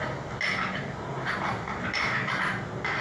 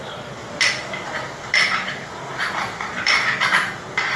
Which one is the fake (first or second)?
second